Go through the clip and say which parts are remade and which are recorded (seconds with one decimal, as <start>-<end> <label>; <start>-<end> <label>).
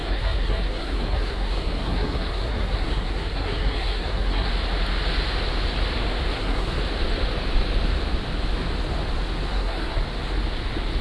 0.0-4.5 remade; 4.5-6.3 recorded; 6.3-6.8 remade; 6.8-9.5 recorded; 9.5-10.0 remade; 10.0-11.0 recorded